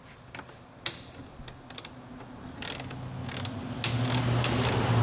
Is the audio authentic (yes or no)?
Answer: yes